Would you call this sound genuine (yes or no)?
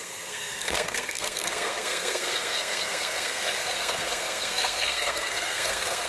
no